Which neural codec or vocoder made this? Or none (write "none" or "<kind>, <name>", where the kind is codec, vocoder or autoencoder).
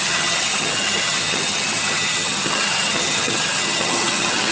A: vocoder, HiFi-GAN